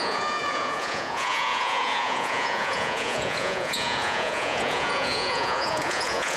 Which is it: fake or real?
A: fake